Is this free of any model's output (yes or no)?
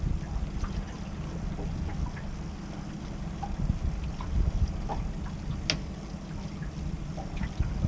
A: yes